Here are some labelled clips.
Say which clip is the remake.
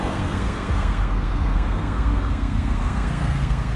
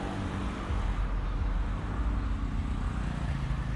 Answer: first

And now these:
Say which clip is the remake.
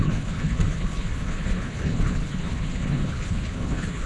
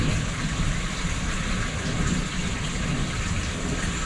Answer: first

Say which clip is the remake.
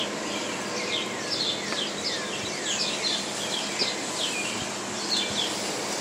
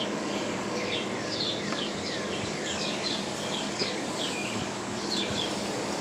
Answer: second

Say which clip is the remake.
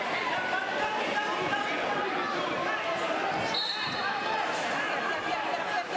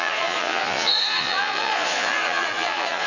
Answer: second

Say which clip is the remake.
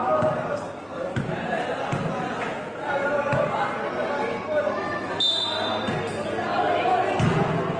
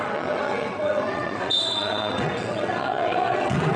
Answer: second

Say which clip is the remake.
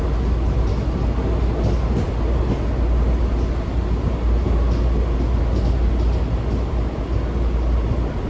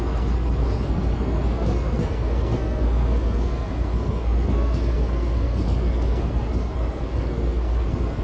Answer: second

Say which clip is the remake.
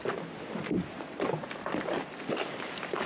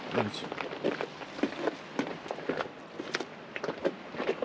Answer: first